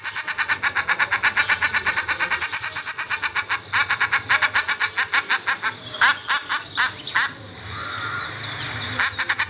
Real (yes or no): yes